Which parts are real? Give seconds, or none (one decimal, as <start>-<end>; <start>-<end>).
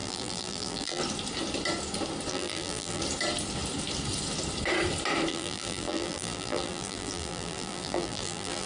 1.0-2.3; 3.0-5.3